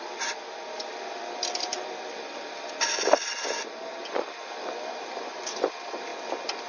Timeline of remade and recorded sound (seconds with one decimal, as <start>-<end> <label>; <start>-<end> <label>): 0.0-6.1 remade; 6.1-6.7 recorded